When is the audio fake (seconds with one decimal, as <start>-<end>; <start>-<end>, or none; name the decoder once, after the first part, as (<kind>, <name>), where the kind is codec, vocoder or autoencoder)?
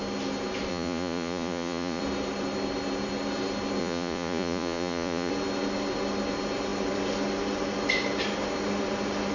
0.7-2.0 (vocoder, Vocos); 3.8-5.3